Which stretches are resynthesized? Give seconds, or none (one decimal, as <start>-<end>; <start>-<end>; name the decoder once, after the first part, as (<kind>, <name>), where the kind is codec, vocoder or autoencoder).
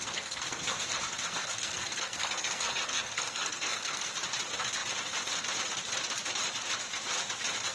0.0-4.1 (codec, SNAC)